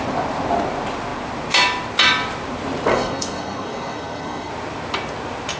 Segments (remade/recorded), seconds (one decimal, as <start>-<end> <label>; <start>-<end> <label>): 0.0-2.9 recorded; 2.9-4.5 remade; 4.5-5.6 recorded